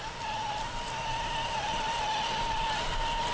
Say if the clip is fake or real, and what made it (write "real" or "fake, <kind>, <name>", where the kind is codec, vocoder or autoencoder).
real